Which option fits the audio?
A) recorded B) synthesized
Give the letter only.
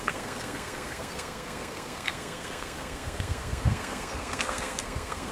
B